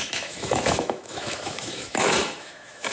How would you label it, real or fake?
fake